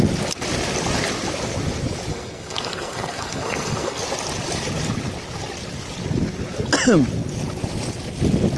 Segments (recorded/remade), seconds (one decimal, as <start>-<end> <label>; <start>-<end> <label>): 0.0-2.1 recorded; 2.1-4.0 remade; 4.0-8.6 recorded